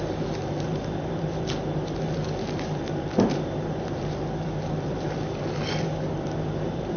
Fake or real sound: fake